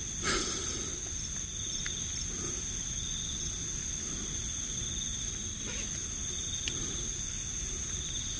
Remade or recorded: recorded